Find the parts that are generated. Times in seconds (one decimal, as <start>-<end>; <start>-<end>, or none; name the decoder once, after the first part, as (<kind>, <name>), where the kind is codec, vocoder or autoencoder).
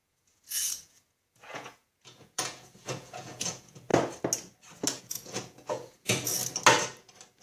0.0-3.9 (vocoder, Vocos); 5.0-6.4